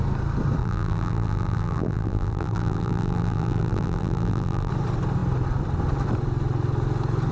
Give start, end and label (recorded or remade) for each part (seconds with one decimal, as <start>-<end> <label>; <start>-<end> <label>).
0.0-0.6 recorded; 0.6-4.7 remade; 4.7-7.3 recorded